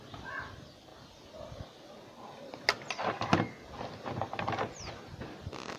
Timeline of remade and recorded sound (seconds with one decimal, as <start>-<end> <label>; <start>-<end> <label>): 0.0-5.8 recorded

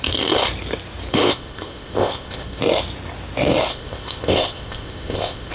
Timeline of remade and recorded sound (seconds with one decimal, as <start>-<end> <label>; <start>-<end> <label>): 0.0-1.1 recorded; 1.1-2.6 remade; 2.6-3.7 recorded; 3.7-5.5 remade

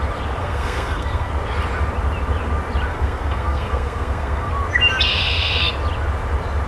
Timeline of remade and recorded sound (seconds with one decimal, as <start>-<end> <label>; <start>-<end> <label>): 0.0-0.4 recorded; 0.4-1.3 remade; 1.3-2.9 recorded; 2.9-4.5 remade; 4.5-5.1 recorded; 5.1-5.7 remade; 5.7-6.7 recorded

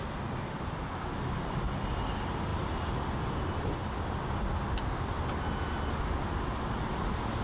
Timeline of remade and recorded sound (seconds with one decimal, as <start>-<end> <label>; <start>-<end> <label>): 0.0-7.4 recorded